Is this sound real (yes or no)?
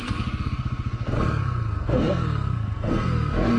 no